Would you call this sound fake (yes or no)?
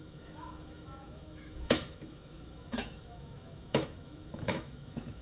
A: yes